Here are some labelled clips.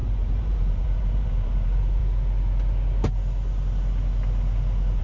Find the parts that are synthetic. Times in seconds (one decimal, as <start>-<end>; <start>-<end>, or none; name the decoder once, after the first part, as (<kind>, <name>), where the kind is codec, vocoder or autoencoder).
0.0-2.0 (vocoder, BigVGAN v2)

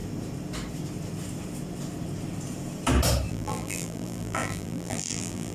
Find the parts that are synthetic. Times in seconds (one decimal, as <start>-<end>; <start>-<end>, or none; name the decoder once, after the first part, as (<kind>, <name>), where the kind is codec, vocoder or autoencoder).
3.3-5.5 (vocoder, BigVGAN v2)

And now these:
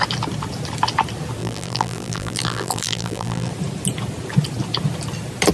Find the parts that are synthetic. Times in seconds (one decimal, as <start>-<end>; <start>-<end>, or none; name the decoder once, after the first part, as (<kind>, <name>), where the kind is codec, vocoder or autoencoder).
1.4-3.5 (vocoder, BigVGAN v2)

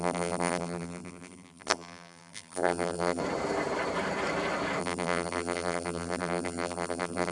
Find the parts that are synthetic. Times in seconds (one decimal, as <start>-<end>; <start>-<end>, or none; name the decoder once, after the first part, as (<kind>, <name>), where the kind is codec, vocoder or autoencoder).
0.0-3.2 (vocoder, BigVGAN v2); 4.8-7.3

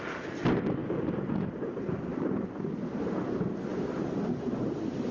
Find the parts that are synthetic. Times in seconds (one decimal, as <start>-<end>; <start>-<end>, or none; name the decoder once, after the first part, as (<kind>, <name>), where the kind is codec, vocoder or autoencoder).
0.8-1.5 (vocoder, BigVGAN v2); 3.7-4.6